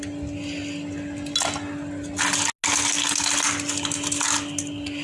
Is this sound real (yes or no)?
yes